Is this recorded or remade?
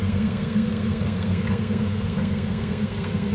remade